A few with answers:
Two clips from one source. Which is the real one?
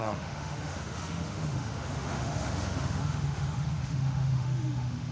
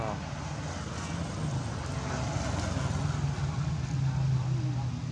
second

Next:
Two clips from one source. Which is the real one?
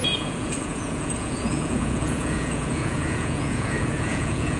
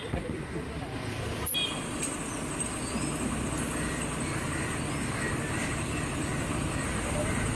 second